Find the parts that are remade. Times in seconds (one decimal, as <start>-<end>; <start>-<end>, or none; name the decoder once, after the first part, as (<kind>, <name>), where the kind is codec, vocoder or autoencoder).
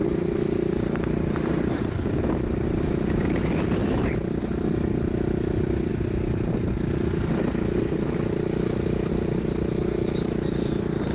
none